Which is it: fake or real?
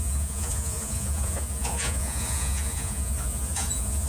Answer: fake